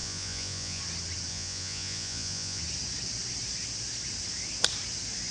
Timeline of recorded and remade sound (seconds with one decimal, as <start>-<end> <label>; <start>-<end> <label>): 0.0-0.8 remade; 0.8-1.3 recorded; 1.3-2.6 remade; 2.6-5.3 recorded